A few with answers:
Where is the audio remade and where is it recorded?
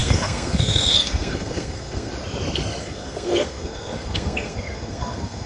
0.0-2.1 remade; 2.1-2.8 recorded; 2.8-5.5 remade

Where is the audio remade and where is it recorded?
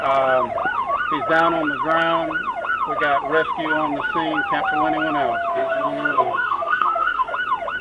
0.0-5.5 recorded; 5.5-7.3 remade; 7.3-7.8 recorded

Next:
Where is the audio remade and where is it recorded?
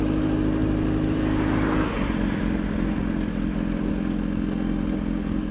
0.0-5.5 recorded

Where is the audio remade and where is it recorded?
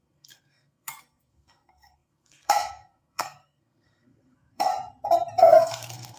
0.0-4.7 remade; 4.7-5.4 recorded; 5.4-6.2 remade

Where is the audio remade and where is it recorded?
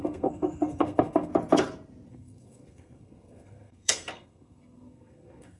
0.0-1.3 remade; 1.3-2.1 recorded; 2.1-5.6 remade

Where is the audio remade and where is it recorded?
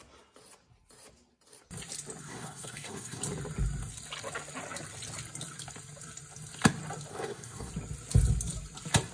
0.0-2.2 recorded; 2.2-3.2 remade; 3.2-7.1 recorded; 7.1-7.7 remade; 7.7-9.1 recorded